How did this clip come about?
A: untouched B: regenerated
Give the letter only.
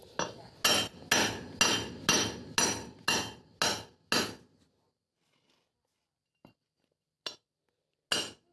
A